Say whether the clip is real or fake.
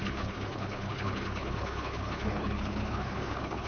fake